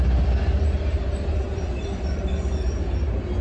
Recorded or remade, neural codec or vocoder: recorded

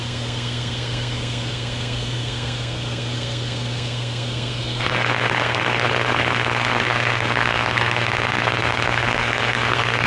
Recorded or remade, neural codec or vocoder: remade, codec, SNAC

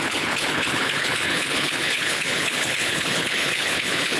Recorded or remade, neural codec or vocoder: remade, codec, HILCodec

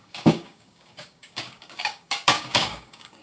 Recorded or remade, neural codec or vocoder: remade, codec, DAC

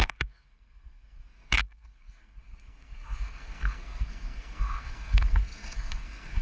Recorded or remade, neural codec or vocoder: remade, codec, SNAC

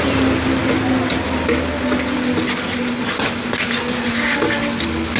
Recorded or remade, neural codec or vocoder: recorded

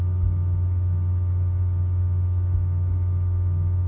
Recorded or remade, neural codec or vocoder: recorded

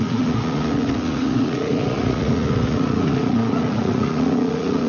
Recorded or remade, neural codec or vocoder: remade, vocoder, Vocos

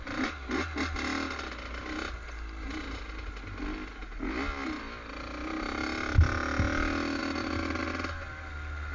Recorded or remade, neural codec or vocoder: recorded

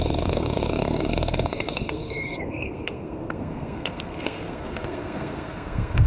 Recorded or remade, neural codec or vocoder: remade, codec, SNAC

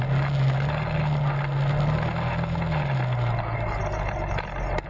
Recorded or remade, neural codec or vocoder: recorded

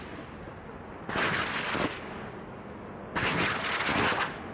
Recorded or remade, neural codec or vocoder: recorded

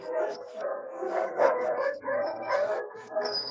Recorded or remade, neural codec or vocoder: remade, codec, SNAC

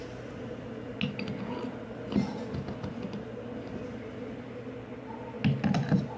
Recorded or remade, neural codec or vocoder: recorded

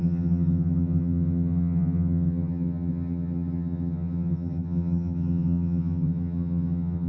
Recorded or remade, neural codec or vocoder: remade, vocoder, HiFi-GAN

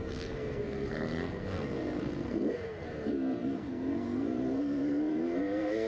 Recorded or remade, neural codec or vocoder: remade, codec, SNAC